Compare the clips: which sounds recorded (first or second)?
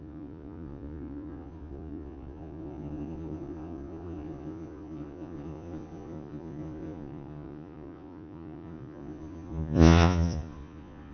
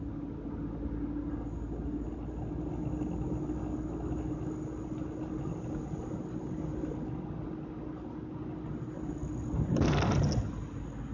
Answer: second